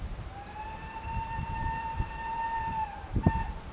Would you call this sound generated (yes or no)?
yes